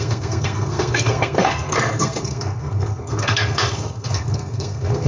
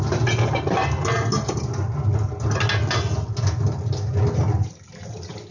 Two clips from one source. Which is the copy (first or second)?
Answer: first